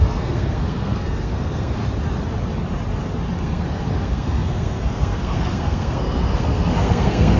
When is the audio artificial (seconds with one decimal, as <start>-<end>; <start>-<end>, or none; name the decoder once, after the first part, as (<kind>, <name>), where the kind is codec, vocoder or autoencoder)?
0.0-1.8 (codec, SNAC); 3.4-7.4